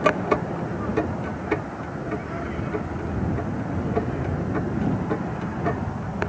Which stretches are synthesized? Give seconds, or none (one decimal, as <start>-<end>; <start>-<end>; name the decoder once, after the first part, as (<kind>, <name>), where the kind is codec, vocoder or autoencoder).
none